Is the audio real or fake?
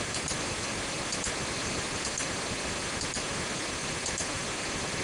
real